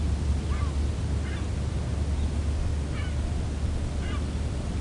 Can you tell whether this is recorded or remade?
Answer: recorded